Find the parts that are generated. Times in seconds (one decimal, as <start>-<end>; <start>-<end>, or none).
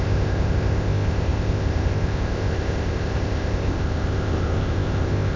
0.0-5.4